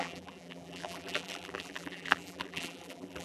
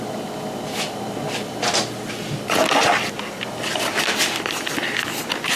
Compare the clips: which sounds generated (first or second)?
first